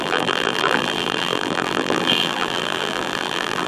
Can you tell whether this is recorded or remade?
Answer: remade